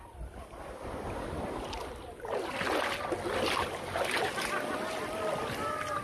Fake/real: real